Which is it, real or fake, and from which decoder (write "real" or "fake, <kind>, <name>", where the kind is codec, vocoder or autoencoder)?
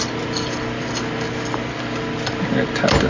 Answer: real